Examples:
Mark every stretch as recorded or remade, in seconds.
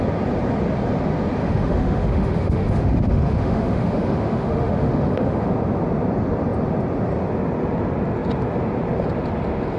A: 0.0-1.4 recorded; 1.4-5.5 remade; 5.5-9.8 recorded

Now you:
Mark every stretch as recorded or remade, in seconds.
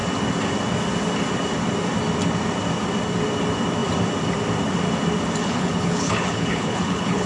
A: 0.0-5.4 recorded; 5.4-7.3 remade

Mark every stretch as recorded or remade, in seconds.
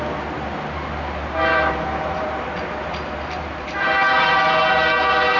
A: 0.0-1.2 recorded; 1.2-4.4 remade; 4.4-5.4 recorded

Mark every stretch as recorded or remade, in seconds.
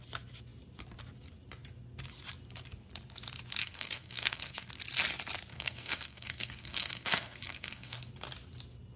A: 0.0-3.6 recorded; 3.6-4.7 remade; 4.7-5.5 recorded; 5.5-8.0 remade; 8.0-9.0 recorded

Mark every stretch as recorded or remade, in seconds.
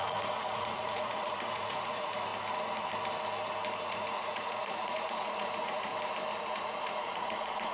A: 0.0-2.3 remade; 2.3-3.8 recorded; 3.8-5.9 remade; 5.9-6.4 recorded; 6.4-7.7 remade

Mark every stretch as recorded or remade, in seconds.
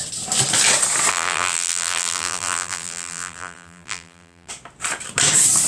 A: 0.0-1.1 recorded; 1.1-4.5 remade; 4.5-5.7 recorded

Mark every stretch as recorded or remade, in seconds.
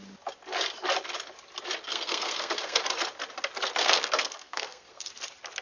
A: 0.0-1.9 recorded; 1.9-2.8 remade; 2.8-3.8 recorded; 3.8-5.1 remade; 5.1-5.6 recorded